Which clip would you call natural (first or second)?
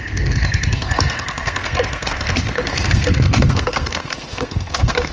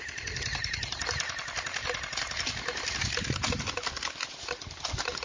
second